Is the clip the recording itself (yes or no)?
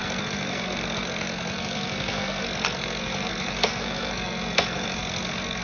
no